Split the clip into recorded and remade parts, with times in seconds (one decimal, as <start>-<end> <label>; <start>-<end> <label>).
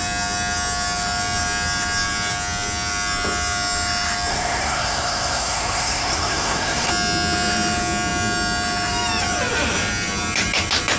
0.0-4.3 recorded; 4.3-6.9 remade; 6.9-11.0 recorded